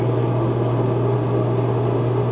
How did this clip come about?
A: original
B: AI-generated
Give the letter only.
A